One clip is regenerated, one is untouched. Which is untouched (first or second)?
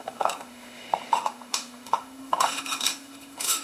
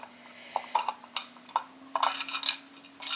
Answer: second